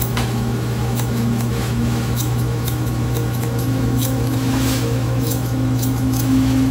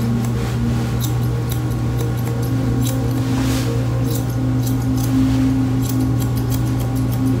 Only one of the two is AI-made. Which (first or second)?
first